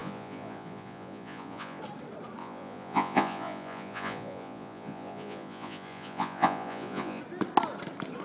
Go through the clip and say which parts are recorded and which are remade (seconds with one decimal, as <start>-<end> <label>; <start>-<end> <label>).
0.0-1.8 remade; 1.8-2.4 recorded; 2.4-7.2 remade; 7.2-8.2 recorded